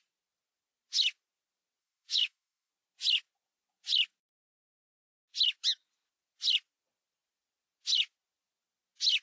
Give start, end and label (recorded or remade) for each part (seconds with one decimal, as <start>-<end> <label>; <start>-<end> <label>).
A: 0.0-1.8 recorded; 1.8-2.7 remade; 2.7-9.2 recorded